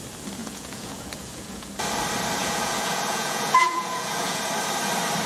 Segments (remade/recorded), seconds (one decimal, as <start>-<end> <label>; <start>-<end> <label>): 0.0-0.4 recorded; 0.4-1.7 remade; 1.7-2.4 recorded; 2.4-4.4 remade; 4.4-5.3 recorded